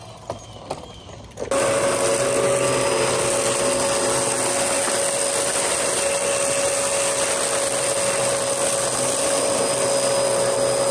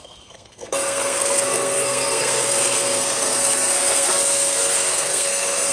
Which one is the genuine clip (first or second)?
first